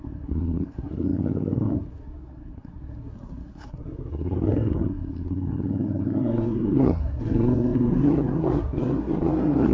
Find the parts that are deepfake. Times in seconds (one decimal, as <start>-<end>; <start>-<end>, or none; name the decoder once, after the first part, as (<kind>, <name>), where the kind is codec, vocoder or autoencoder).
0.0-9.7 (codec, SNAC)